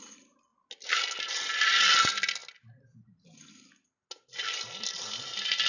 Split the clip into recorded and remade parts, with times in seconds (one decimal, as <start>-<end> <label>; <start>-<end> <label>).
0.0-5.7 recorded